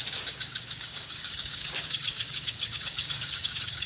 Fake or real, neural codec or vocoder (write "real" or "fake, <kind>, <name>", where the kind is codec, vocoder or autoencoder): fake, codec, DAC